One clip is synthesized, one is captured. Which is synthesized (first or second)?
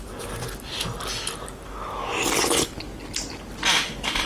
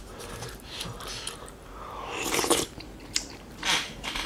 second